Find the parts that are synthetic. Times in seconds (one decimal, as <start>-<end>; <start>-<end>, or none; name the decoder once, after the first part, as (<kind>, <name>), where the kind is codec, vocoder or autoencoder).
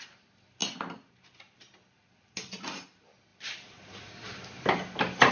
3.3-4.0 (vocoder, BigVGAN v2)